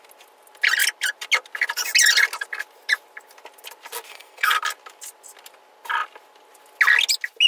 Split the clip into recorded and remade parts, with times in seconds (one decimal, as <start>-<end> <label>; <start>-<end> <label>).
0.0-4.1 recorded; 4.1-4.6 remade; 4.6-7.5 recorded